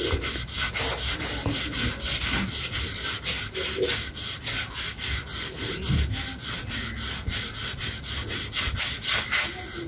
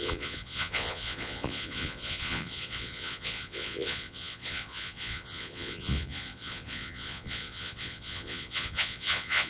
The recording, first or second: first